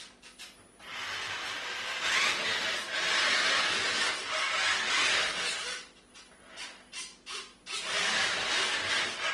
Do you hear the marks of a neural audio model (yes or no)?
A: no